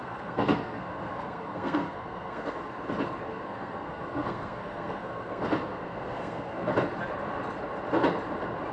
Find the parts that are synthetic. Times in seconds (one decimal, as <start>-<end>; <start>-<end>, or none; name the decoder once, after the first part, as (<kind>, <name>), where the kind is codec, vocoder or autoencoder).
0.0-2.6 (codec, SNAC); 3.3-6.7